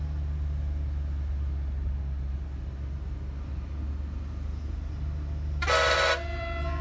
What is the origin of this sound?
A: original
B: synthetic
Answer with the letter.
A